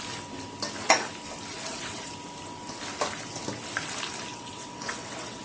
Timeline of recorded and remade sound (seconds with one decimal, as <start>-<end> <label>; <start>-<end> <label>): 0.0-1.5 recorded; 1.5-2.1 remade; 2.1-4.3 recorded; 4.3-5.4 remade